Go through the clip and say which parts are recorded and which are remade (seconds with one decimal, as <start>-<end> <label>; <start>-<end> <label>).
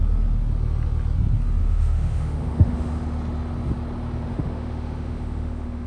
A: 0.0-1.6 recorded; 1.6-2.9 remade; 2.9-4.3 recorded; 4.3-5.9 remade